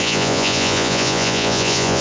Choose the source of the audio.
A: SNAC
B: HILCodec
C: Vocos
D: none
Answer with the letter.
C